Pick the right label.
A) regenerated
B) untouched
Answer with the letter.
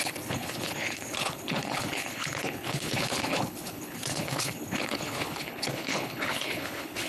A